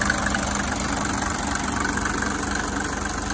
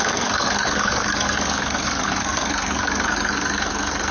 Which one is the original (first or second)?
first